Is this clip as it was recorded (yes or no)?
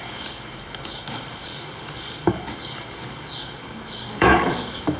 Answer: no